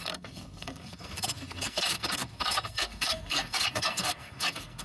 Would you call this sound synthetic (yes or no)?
yes